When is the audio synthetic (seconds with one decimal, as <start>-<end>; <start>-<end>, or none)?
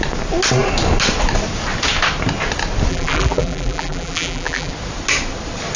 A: 2.9-4.7